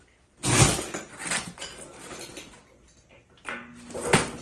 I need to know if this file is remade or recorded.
recorded